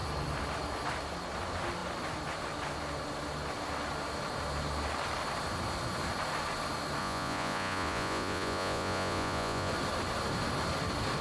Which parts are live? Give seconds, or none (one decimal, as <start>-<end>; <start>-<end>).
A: 0.0-7.0; 9.7-11.2